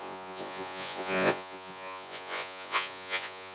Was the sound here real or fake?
fake